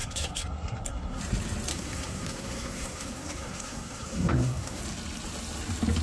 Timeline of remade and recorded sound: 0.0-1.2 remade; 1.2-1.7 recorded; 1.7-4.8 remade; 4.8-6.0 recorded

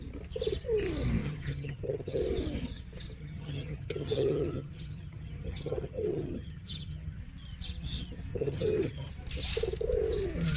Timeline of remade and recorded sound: 0.0-1.2 recorded; 1.2-2.2 remade; 2.2-3.2 recorded; 3.2-7.2 remade; 7.2-8.3 recorded; 8.3-9.1 remade; 9.1-10.6 recorded

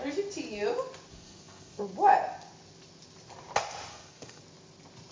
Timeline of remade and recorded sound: 0.0-1.1 recorded; 1.1-1.8 remade; 1.8-3.9 recorded; 3.9-4.4 remade; 4.4-5.1 recorded

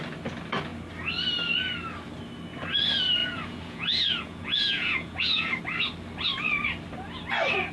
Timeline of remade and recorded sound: 0.0-3.2 recorded; 3.2-5.6 remade; 5.6-7.7 recorded

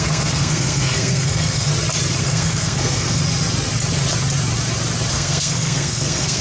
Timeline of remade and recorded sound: 0.0-1.7 remade; 1.7-2.2 recorded; 2.2-3.2 remade; 3.2-5.1 recorded; 5.1-6.4 remade

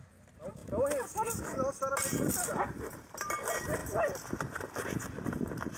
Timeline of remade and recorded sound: 0.0-5.8 recorded